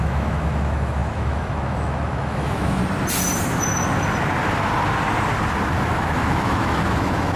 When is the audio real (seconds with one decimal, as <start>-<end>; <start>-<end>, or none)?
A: 2.8-5.8